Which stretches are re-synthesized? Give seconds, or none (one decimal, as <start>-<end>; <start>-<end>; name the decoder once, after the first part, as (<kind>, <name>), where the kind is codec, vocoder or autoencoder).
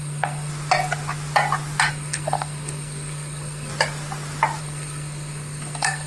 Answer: 0.0-0.5 (codec, SNAC); 1.9-3.7; 4.6-6.1